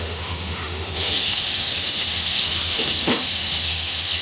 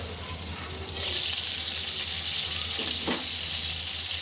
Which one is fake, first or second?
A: first